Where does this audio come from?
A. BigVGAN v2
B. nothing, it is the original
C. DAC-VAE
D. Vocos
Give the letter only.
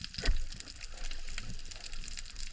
B